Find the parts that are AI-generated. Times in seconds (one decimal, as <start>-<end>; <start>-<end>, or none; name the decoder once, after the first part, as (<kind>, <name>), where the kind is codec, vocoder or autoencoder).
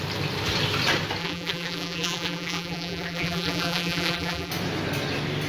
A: 1.2-4.5 (vocoder, BigVGAN v2)